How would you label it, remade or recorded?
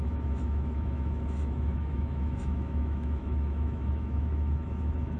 remade